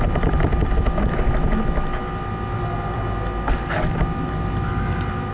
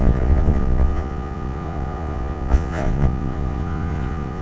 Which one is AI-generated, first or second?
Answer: second